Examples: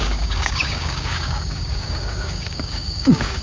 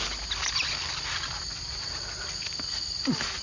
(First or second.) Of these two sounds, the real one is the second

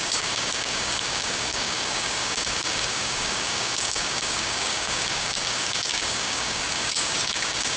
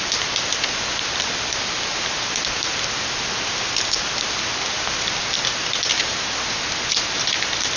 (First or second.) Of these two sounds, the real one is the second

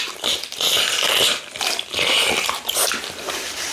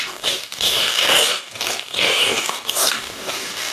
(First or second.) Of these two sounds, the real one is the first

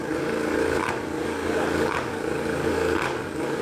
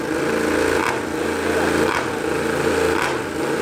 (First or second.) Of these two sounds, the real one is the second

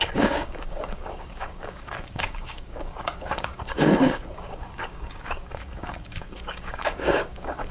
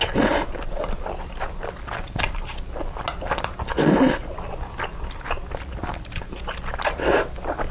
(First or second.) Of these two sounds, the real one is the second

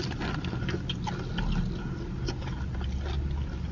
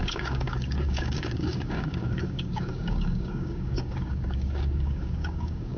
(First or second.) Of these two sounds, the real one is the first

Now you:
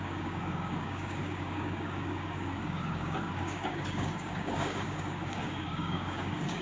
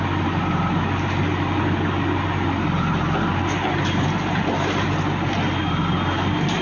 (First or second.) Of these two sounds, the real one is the second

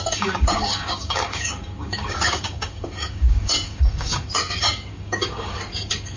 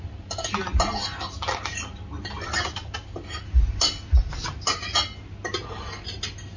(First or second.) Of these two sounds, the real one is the second